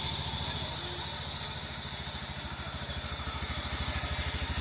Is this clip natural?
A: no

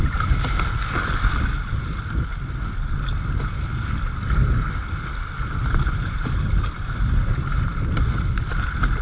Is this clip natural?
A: yes